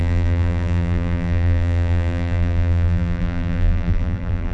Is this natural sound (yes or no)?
no